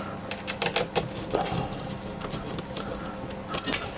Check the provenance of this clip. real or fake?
real